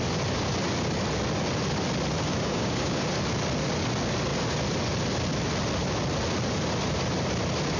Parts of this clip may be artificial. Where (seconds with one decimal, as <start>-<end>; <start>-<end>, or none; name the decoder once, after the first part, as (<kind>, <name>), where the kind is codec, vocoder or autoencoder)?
2.3-3.0 (codec, DAC)